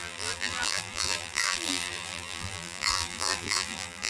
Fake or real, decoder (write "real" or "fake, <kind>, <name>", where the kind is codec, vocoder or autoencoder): fake, vocoder, BigVGAN v2